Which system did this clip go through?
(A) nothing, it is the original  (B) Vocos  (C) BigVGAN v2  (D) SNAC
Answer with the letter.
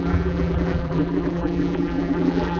C